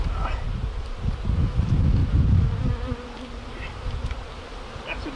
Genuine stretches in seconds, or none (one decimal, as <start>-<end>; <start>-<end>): 0.0-5.2